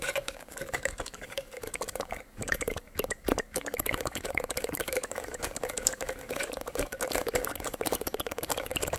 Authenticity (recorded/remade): remade